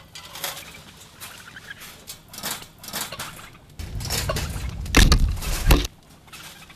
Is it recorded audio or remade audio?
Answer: recorded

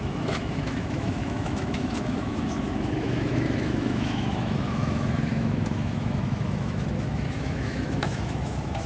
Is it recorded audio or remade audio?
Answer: remade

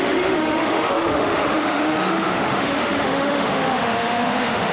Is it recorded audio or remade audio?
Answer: remade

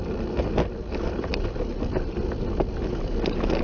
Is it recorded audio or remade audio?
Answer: recorded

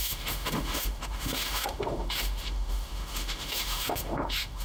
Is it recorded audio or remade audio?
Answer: remade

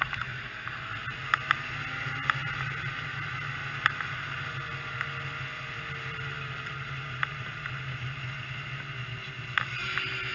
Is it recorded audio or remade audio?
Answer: recorded